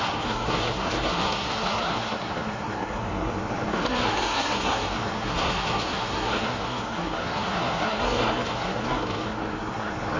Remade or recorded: remade